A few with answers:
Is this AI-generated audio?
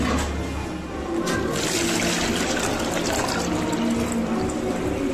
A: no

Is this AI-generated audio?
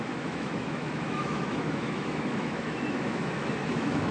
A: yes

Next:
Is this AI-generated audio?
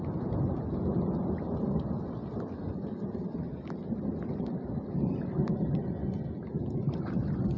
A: no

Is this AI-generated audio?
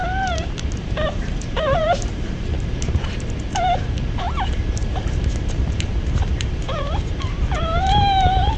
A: yes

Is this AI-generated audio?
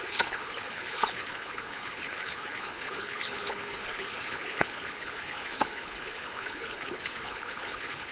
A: yes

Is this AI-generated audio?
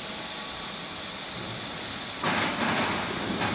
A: no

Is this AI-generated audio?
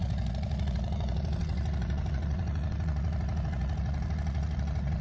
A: yes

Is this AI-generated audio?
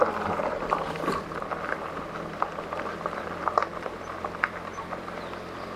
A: no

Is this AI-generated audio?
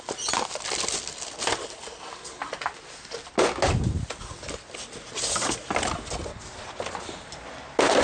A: no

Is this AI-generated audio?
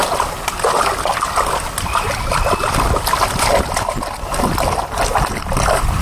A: no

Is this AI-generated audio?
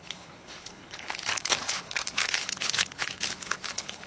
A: yes